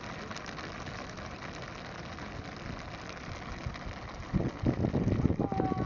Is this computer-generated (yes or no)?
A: no